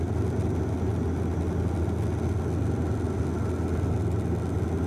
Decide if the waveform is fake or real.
real